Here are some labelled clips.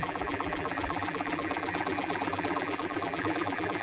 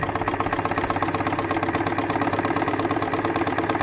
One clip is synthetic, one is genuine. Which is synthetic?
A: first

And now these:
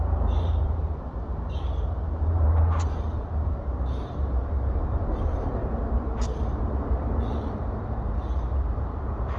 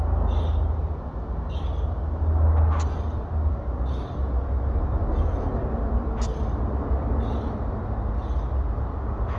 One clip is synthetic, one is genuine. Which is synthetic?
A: first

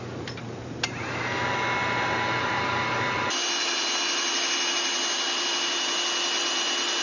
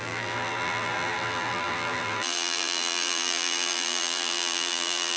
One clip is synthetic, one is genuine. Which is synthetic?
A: second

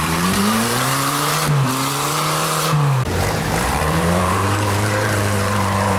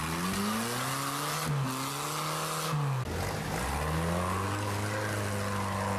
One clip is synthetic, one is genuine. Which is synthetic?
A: first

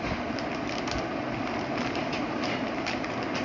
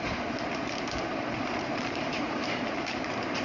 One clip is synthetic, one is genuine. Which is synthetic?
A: second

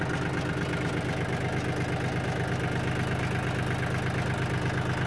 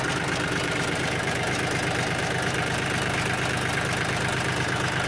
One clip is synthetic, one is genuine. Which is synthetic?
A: second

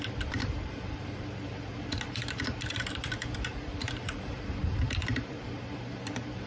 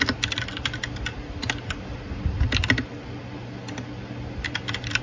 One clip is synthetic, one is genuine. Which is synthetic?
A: first